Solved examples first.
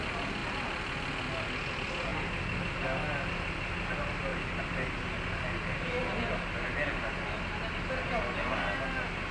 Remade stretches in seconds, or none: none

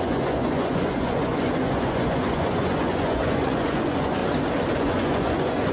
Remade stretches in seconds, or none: 0.0-4.2 (vocoder, Vocos); 4.8-5.7